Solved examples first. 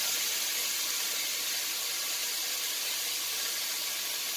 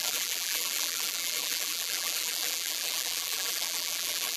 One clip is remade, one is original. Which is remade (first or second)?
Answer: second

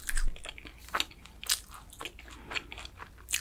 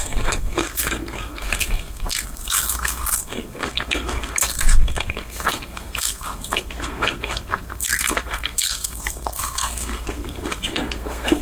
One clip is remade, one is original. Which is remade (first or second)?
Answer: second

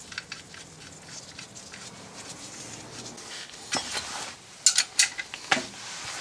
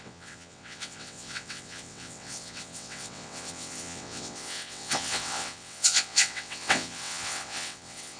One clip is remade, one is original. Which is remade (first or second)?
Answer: second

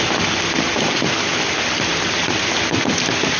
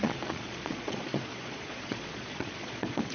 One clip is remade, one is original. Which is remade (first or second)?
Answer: second